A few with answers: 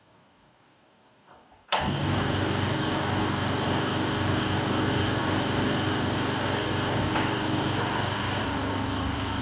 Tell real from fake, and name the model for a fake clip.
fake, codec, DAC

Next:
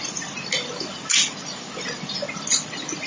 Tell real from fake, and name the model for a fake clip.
real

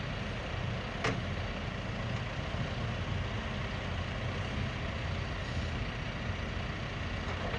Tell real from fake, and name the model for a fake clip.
real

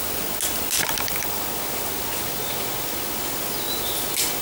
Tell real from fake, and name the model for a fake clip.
real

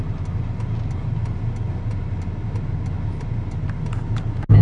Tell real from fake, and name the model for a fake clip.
real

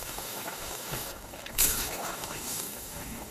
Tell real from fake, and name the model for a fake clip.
fake, codec, DAC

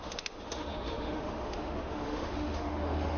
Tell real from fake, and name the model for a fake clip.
fake, autoencoder, DAC-VAE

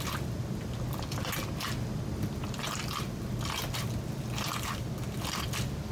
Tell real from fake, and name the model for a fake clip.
real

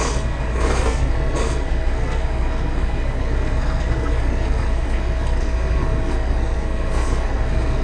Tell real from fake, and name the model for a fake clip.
fake, codec, SNAC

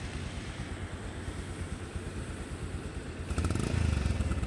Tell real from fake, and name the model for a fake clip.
real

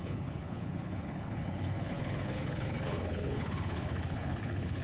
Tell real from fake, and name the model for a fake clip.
fake, codec, HILCodec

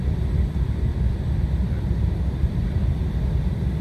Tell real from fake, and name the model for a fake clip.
fake, vocoder, BigVGAN v2